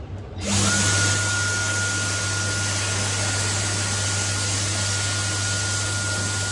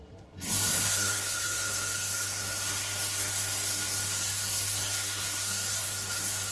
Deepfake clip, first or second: second